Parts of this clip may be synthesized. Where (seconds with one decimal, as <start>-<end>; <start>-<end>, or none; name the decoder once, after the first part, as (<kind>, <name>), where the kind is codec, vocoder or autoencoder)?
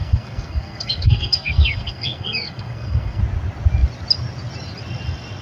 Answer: 0.0-3.2 (codec, SNAC)